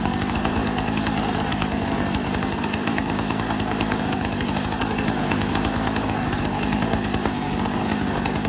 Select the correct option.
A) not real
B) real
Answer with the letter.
A